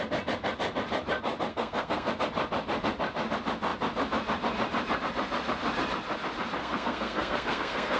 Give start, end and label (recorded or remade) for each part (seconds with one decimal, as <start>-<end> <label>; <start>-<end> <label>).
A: 0.0-1.5 recorded; 1.5-2.1 remade; 2.1-6.6 recorded; 6.6-8.0 remade